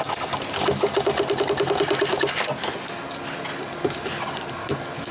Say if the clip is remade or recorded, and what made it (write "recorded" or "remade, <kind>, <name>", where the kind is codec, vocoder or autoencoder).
recorded